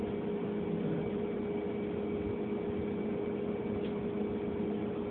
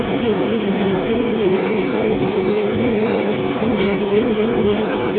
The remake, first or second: second